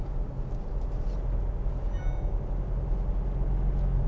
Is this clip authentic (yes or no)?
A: yes